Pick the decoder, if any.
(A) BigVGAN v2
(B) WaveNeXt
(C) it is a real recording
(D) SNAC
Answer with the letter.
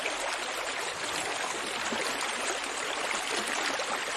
C